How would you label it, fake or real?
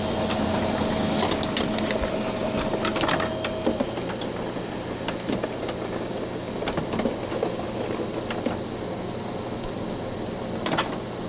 real